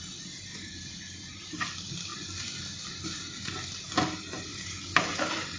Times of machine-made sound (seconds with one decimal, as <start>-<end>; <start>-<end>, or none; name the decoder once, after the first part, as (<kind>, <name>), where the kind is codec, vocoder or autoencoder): 0.5-1.5 (vocoder, BigVGAN v2); 2.1-2.6; 4.5-5.6